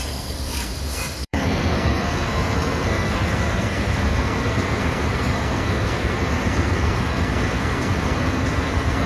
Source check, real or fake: fake